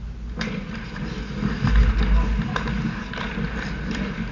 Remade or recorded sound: recorded